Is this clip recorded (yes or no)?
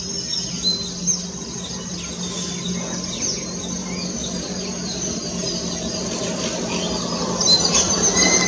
yes